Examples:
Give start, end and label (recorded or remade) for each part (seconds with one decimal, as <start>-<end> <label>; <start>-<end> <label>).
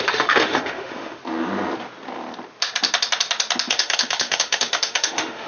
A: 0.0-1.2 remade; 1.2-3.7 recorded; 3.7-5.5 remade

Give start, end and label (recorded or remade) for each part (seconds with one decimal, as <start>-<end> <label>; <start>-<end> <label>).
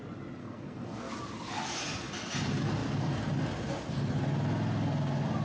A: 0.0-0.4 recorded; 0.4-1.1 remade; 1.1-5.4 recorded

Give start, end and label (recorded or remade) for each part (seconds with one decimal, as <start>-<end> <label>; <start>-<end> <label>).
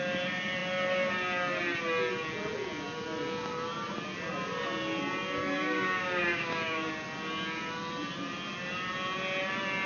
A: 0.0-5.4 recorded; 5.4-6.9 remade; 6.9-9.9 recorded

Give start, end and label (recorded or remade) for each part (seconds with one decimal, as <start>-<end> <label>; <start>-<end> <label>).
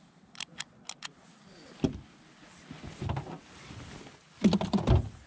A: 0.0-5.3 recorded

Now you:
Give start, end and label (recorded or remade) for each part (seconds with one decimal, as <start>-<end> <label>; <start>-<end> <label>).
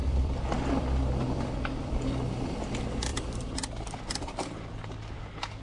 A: 0.0-2.7 remade; 2.7-3.1 recorded; 3.1-4.7 remade; 4.7-5.6 recorded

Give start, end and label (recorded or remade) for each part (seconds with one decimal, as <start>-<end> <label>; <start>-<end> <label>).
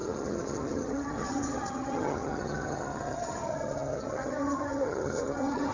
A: 0.0-5.7 remade